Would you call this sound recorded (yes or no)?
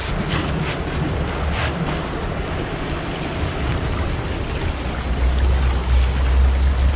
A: yes